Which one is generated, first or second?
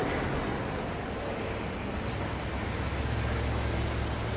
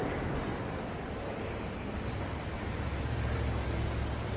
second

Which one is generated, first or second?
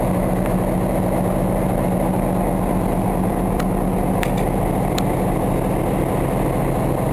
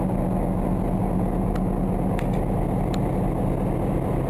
first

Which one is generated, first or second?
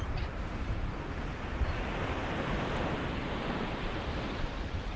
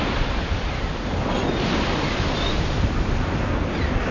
first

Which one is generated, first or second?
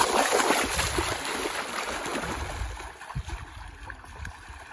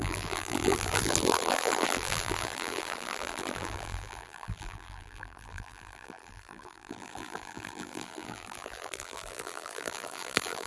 second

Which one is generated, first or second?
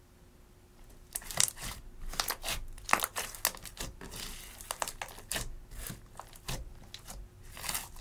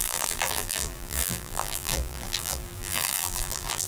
second